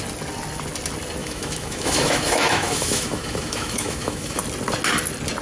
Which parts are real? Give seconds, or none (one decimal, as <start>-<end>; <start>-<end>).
0.0-1.2; 4.4-5.4